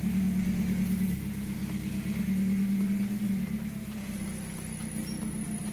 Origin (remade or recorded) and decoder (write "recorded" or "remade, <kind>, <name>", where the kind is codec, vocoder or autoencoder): recorded